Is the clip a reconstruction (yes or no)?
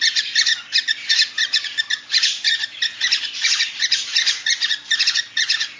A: no